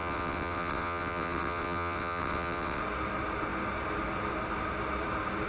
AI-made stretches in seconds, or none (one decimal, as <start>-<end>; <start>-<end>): 0.0-2.8